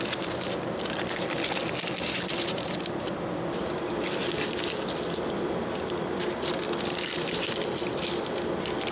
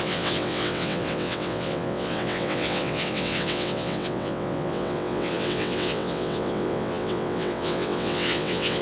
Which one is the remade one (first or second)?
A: second